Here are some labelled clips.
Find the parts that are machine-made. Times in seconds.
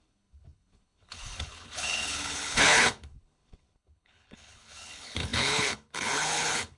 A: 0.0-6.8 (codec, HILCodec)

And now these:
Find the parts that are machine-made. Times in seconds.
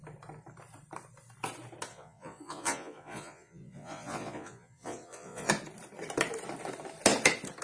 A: 1.9-5.5 (vocoder, Vocos)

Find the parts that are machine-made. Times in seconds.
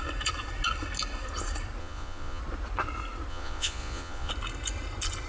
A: 1.8-2.4 (vocoder, Vocos); 3.3-4.3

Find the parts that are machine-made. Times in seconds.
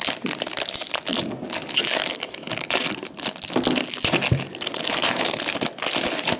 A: none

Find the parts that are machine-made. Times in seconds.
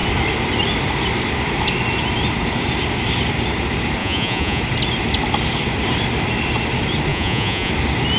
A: 4.0-4.6 (vocoder, Vocos); 7.1-7.7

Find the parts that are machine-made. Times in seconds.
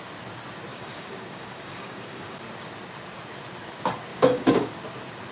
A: 0.7-2.4 (codec, DAC); 4.1-4.7